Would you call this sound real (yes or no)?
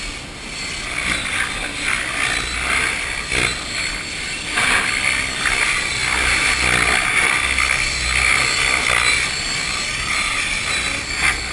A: yes